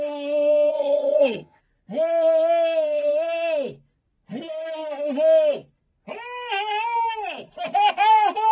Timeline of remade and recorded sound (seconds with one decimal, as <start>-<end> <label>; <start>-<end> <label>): 0.0-0.7 recorded; 0.7-1.6 remade; 1.6-8.5 recorded